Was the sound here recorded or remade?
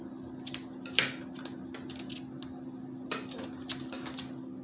recorded